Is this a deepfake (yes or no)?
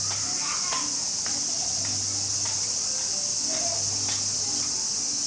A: no